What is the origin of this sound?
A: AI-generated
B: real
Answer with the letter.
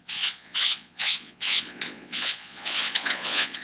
A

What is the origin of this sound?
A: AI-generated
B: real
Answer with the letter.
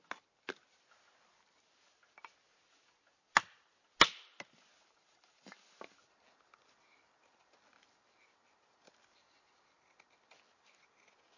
B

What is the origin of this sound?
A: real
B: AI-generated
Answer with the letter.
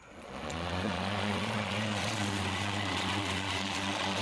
B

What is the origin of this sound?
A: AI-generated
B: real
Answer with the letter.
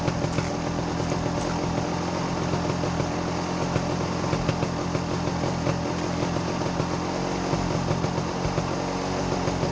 B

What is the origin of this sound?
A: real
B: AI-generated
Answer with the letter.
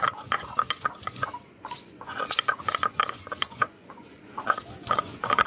B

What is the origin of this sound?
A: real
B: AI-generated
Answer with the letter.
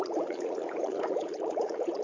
B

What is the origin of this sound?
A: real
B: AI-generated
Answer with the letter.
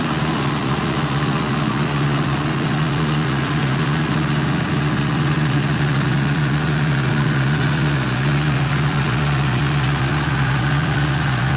B